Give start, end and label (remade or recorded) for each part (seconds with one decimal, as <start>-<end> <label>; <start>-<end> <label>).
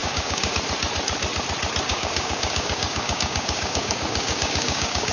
0.0-0.5 remade; 0.5-1.9 recorded; 1.9-5.1 remade